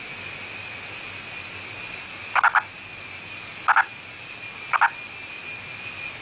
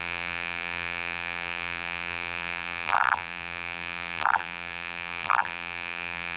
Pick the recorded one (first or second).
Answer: first